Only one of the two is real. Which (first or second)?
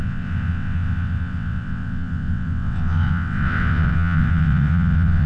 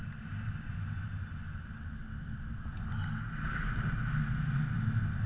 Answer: second